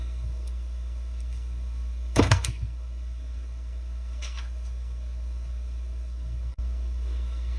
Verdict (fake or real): fake